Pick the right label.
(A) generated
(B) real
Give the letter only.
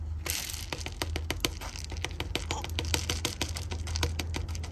B